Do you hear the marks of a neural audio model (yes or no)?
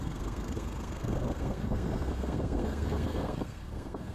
yes